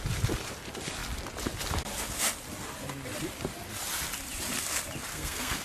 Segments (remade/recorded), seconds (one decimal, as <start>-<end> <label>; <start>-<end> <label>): 0.0-5.1 recorded; 5.1-5.6 remade